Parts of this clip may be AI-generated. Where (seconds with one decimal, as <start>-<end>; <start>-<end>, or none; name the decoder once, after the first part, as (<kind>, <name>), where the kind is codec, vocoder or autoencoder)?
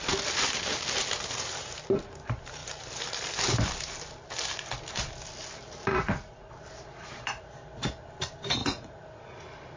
5.9-6.5 (vocoder, Vocos); 8.6-9.4